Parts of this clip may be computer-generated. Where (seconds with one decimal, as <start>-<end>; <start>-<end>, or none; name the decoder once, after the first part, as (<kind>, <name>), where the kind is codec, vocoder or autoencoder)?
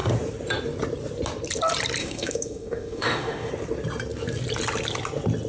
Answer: 2.0-3.5 (autoencoder, DAC-VAE)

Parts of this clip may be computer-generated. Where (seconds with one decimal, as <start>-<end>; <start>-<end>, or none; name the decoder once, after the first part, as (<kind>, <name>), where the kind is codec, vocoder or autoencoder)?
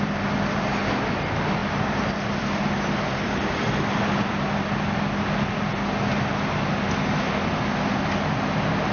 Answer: none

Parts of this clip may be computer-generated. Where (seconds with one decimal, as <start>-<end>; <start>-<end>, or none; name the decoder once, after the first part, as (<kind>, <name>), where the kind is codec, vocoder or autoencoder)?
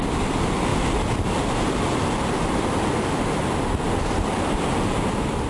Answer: none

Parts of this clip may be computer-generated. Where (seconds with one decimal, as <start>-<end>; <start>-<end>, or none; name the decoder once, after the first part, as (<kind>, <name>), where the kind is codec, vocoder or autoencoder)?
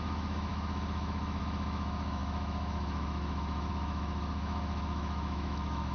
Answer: 0.0-5.9 (autoencoder, DAC-VAE)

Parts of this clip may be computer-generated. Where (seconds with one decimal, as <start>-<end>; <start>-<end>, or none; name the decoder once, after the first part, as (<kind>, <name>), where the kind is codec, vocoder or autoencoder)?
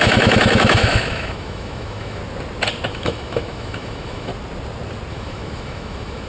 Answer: 0.0-2.2 (autoencoder, DAC-VAE); 2.9-4.3; 5.1-6.3